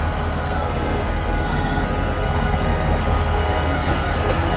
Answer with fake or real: fake